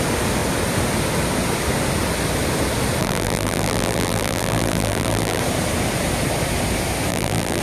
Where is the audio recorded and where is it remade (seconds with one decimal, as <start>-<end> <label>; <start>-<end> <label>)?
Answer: 0.0-3.0 recorded; 3.0-5.4 remade; 5.4-7.1 recorded; 7.1-7.6 remade